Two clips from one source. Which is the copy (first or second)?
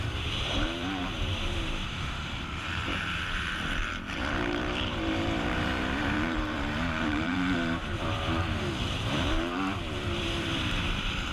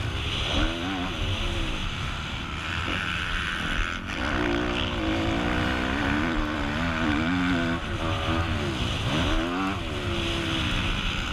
first